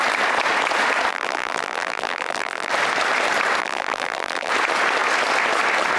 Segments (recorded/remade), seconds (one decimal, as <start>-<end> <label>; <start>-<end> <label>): 0.0-1.1 recorded; 1.1-2.7 remade; 2.7-3.6 recorded; 3.6-4.5 remade; 4.5-6.0 recorded